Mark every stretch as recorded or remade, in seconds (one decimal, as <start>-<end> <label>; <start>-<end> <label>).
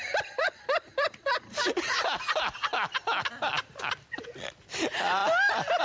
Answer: 0.0-0.4 remade; 0.4-3.9 recorded; 3.9-5.8 remade